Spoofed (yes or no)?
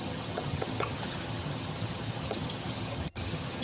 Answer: yes